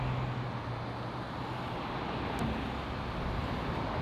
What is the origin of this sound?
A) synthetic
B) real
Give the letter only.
B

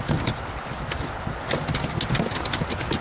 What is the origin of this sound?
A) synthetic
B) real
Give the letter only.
B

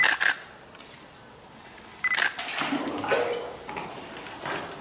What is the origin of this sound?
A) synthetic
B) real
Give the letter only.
B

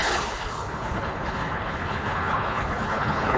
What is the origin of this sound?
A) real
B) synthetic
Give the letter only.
B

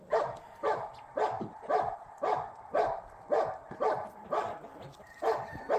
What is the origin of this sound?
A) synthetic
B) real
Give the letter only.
A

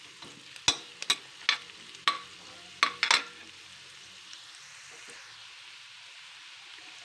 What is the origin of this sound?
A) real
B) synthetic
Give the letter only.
A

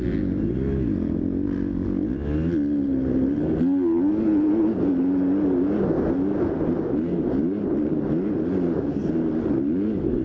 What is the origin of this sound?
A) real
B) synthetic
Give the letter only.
A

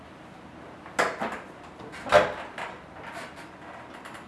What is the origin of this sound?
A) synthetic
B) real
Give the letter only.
B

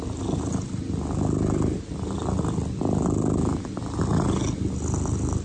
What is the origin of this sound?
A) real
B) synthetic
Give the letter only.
A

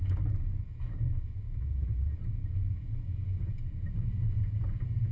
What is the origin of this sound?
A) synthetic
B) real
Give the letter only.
A